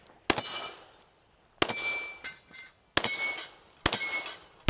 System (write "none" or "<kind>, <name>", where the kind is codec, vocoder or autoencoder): none